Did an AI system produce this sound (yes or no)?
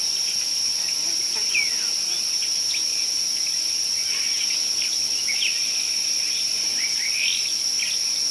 no